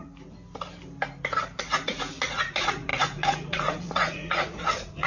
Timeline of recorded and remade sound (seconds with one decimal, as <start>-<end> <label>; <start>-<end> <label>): 0.0-1.6 recorded; 1.6-5.1 remade